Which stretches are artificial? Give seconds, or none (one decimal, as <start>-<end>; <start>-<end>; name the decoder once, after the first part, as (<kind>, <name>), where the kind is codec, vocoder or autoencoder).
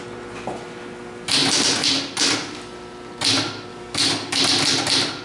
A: 3.7-4.4 (codec, DAC)